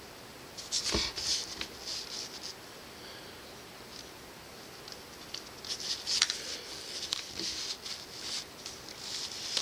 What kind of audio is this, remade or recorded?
recorded